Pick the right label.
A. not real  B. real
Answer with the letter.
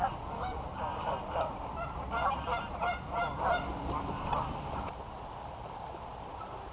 A